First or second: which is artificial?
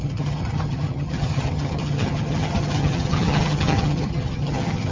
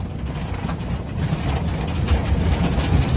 first